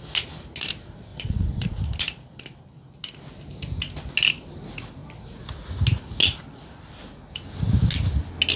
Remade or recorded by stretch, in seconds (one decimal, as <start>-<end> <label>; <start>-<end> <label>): 0.0-1.1 recorded; 1.1-1.8 remade; 1.8-8.6 recorded